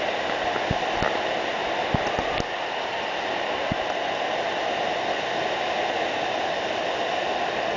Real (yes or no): yes